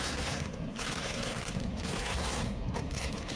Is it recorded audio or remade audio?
remade